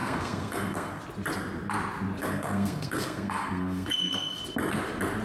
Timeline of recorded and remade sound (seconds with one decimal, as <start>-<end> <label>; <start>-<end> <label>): 0.0-1.0 remade; 1.0-2.2 recorded; 2.2-4.4 remade; 4.4-5.2 recorded